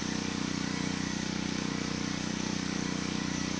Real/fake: fake